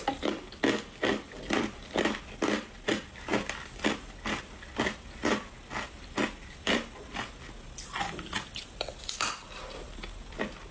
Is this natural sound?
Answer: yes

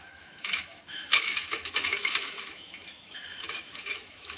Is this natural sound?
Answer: no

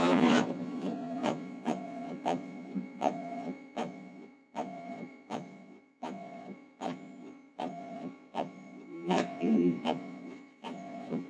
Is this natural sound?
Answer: no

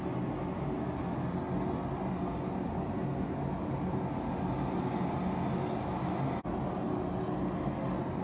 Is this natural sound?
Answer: yes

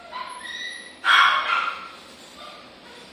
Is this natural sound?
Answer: yes